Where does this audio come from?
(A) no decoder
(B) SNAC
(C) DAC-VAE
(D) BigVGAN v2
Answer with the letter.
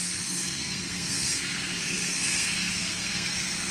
B